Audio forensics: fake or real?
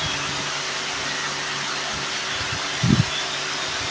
real